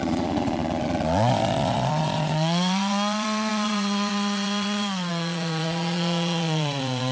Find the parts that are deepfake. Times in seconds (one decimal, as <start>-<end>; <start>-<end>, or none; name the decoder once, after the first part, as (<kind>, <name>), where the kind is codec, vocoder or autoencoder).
0.0-7.1 (vocoder, Vocos)